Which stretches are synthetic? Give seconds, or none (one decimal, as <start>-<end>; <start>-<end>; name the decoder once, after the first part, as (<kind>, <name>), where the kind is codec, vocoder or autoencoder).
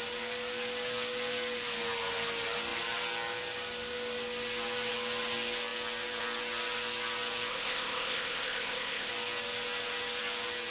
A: 7.5-9.1 (codec, ZipCodec)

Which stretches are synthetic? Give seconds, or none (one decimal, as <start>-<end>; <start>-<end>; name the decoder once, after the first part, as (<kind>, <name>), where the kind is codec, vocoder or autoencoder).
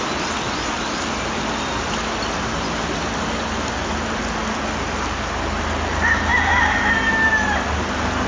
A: none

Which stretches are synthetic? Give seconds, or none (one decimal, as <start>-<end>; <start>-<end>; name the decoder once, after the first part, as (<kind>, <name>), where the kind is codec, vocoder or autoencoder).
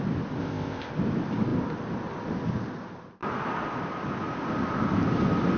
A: 0.4-0.9 (codec, ZipCodec)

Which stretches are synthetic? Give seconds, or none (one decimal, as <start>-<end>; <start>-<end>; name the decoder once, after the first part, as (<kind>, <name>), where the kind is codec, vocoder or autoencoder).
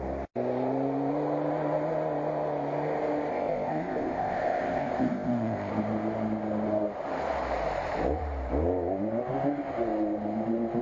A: 3.3-5.7 (codec, ZipCodec)